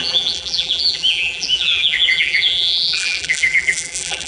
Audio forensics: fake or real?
fake